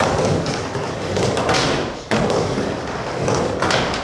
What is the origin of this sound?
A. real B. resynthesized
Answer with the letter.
B